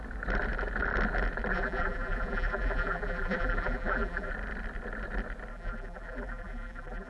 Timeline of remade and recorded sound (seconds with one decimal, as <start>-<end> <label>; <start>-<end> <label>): 0.0-1.5 recorded; 1.5-4.3 remade; 4.3-5.5 recorded; 5.5-7.1 remade